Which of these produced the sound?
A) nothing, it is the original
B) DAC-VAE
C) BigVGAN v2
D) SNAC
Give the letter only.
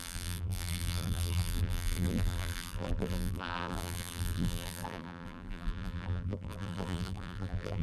C